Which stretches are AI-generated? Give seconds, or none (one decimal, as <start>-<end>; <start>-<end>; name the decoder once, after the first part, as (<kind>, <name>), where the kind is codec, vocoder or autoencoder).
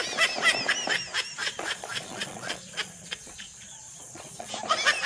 1.4-4.5 (vocoder, Vocos)